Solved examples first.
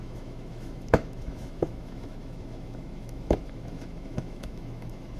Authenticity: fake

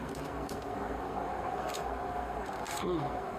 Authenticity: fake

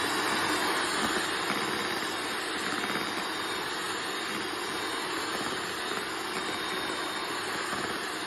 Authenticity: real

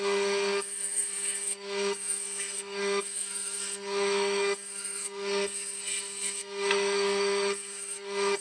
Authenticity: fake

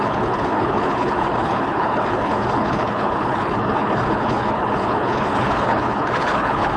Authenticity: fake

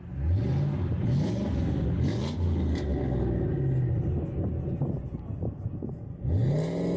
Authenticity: real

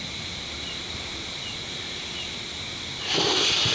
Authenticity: fake